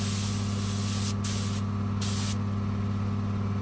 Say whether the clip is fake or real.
real